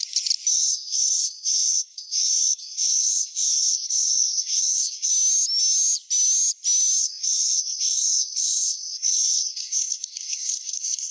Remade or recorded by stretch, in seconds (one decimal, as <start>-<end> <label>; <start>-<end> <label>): 0.0-0.5 recorded; 0.5-5.1 remade; 5.1-7.0 recorded; 7.0-11.1 remade